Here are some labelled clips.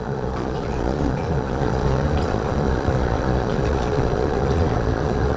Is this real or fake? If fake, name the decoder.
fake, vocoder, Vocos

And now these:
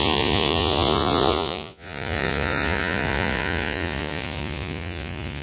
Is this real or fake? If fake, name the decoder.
fake, vocoder, Vocos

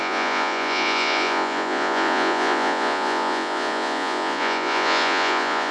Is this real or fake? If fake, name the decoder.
fake, vocoder, Vocos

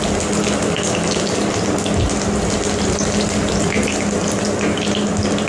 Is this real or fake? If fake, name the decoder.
real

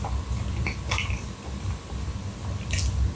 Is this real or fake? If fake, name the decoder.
real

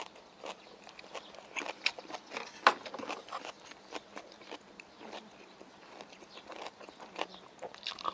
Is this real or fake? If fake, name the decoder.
real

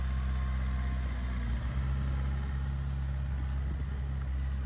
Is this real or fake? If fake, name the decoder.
real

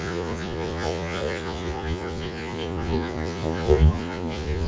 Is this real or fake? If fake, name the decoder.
fake, vocoder, Vocos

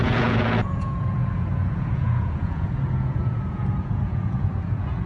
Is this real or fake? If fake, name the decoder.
fake, vocoder, Vocos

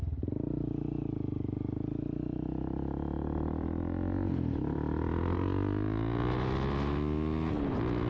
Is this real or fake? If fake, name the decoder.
real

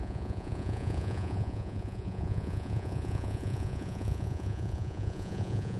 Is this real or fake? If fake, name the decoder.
fake, vocoder, Vocos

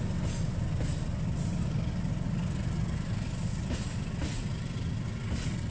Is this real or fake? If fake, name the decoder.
real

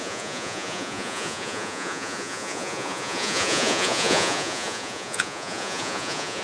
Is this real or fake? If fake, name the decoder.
fake, vocoder, Vocos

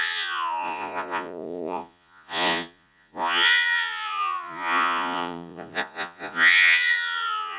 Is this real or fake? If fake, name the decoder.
fake, vocoder, Vocos